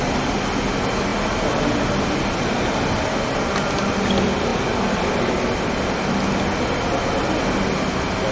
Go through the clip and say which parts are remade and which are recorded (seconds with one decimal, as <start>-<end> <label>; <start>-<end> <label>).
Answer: 0.0-8.3 recorded